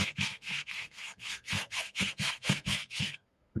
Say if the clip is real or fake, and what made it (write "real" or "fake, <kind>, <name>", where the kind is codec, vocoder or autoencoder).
fake, codec, SNAC